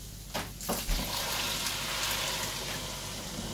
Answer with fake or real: real